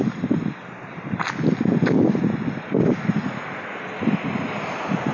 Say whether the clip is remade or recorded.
recorded